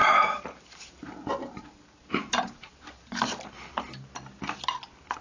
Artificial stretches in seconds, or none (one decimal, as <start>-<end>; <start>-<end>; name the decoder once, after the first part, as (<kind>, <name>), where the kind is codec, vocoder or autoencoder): 0.0-3.7 (vocoder, BigVGAN v2)